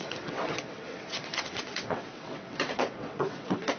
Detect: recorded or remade remade